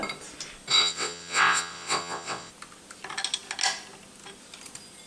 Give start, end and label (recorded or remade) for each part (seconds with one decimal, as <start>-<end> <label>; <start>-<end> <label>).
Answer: 0.0-0.7 recorded; 0.7-2.5 remade; 2.5-5.1 recorded